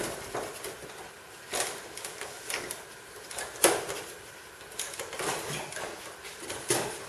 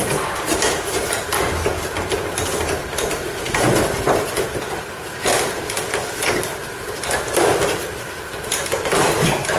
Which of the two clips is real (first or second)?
first